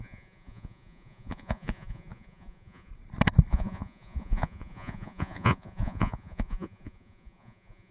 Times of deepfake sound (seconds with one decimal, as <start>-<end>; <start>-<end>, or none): 0.0-2.9; 3.5-7.9